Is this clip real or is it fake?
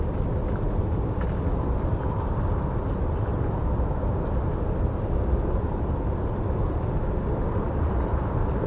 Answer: real